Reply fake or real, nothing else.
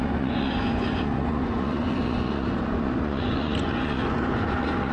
fake